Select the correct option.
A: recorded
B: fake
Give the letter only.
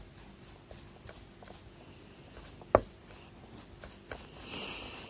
A